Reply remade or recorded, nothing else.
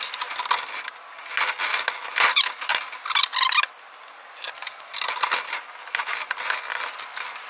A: recorded